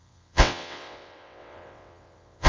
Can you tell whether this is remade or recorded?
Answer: remade